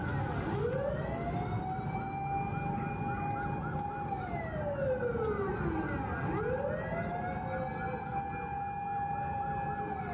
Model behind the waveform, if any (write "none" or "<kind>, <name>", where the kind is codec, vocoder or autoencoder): none